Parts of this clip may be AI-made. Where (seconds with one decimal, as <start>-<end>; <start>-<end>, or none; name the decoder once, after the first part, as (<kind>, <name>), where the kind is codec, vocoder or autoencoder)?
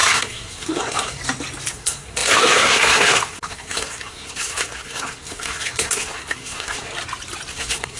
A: 0.0-1.2 (codec, SNAC); 1.7-6.9; 7.5-8.0